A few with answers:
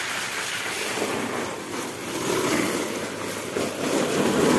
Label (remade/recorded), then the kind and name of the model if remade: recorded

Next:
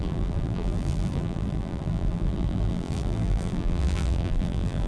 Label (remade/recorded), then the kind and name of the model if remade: remade, vocoder, BigVGAN v2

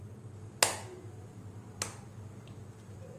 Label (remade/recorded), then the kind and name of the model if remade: recorded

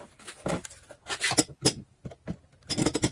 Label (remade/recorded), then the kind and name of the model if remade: recorded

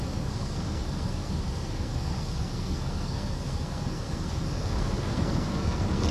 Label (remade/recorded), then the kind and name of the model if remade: remade, codec, SNAC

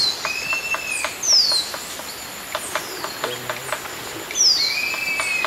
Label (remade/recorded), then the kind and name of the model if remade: recorded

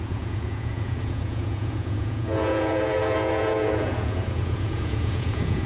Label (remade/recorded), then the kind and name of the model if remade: remade, vocoder, Vocos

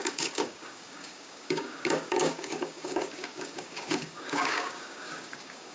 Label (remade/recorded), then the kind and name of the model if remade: remade, codec, DAC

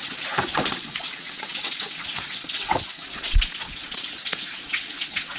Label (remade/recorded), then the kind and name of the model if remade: remade, vocoder, WaveNeXt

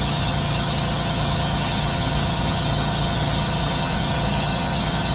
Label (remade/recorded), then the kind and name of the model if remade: remade, vocoder, HiFi-GAN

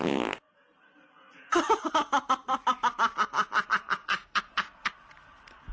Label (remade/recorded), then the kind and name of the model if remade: recorded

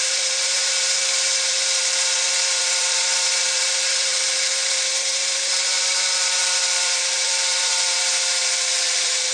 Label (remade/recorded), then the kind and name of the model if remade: remade, vocoder, BigVGAN v2